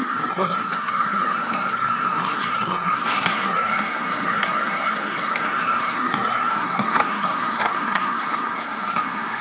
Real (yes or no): no